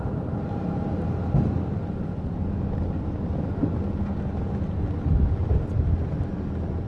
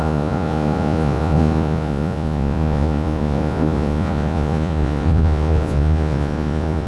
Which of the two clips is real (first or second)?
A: first